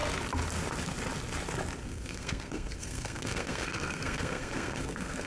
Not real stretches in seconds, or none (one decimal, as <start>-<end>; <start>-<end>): 1.8-5.3